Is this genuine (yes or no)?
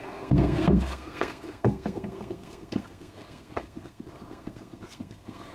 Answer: no